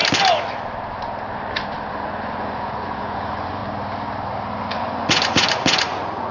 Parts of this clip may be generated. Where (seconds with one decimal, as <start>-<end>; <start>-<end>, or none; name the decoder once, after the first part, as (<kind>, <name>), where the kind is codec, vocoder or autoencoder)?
1.9-3.6 (vocoder, Vocos); 4.8-6.3